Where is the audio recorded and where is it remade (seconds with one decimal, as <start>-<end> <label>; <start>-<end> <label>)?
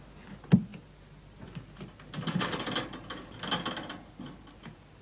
0.0-5.0 recorded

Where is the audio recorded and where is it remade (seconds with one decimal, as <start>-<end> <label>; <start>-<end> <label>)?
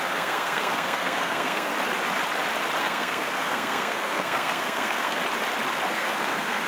0.0-1.7 remade; 1.7-2.8 recorded; 2.8-5.2 remade; 5.2-5.9 recorded; 5.9-6.7 remade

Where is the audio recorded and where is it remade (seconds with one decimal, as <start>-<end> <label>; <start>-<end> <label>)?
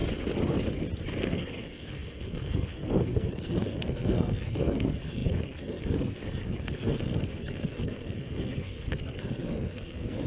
0.0-1.2 recorded; 1.2-10.3 remade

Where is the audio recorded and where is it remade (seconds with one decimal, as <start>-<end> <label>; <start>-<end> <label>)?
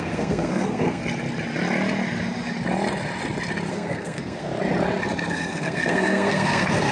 0.0-1.0 remade; 1.0-3.7 recorded; 3.7-4.5 remade; 4.5-5.3 recorded; 5.3-6.9 remade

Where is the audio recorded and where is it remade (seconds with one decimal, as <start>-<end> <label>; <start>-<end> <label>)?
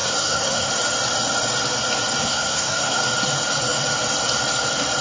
0.0-0.7 remade; 0.7-2.2 recorded; 2.2-3.0 remade; 3.0-5.0 recorded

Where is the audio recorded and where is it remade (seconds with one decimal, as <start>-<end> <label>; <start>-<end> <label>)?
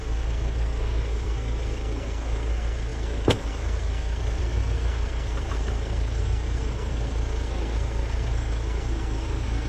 0.0-9.7 remade